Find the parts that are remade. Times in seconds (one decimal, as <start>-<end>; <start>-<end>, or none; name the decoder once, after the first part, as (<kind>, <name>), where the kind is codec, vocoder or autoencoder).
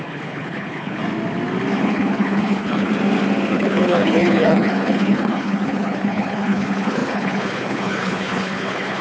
0.0-1.0 (codec, HILCodec); 1.8-2.9; 3.5-9.0